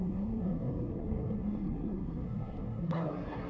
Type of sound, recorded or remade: remade